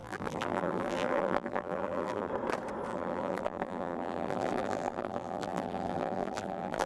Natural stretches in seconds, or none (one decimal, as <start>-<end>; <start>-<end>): 2.3-2.9